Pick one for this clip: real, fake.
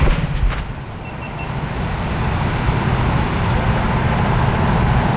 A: real